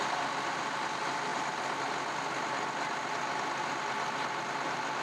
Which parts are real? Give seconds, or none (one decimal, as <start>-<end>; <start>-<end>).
0.0-5.0